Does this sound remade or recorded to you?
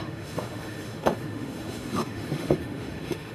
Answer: remade